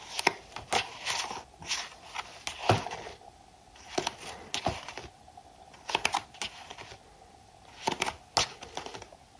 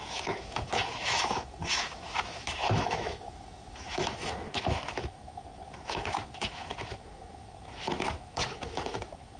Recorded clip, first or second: first